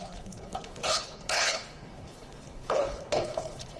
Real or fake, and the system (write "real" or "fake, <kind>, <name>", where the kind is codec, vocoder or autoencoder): fake, codec, HILCodec